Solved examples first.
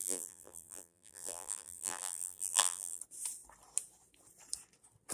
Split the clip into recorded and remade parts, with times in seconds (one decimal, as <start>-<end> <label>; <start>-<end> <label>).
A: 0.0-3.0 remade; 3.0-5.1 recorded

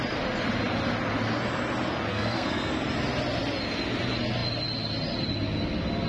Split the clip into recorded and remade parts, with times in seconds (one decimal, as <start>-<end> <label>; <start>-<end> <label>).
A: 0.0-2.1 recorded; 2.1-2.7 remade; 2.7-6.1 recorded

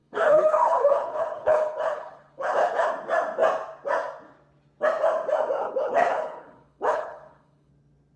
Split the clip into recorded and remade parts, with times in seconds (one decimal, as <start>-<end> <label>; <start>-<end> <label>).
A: 0.0-2.9 remade; 2.9-5.6 recorded; 5.6-7.7 remade; 7.7-8.2 recorded

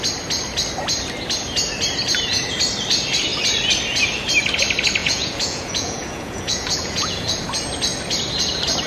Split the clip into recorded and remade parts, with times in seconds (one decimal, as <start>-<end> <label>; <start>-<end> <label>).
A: 0.0-5.0 recorded; 5.0-7.4 remade; 7.4-8.9 recorded

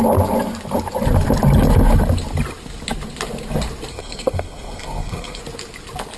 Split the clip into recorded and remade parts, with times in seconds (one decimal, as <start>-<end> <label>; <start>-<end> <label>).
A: 0.0-3.9 recorded; 3.9-5.4 remade; 5.4-6.2 recorded